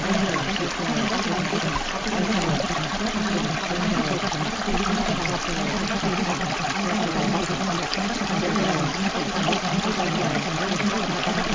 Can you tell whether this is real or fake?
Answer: real